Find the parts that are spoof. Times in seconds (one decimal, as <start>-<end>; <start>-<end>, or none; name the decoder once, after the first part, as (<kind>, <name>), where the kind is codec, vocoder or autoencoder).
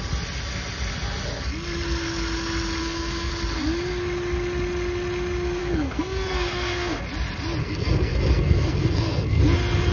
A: 2.8-3.3 (codec, SNAC); 5.6-7.0; 7.6-9.4